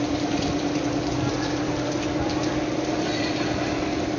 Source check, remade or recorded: remade